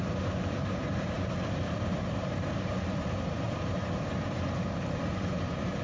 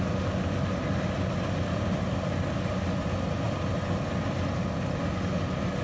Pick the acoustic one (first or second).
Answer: second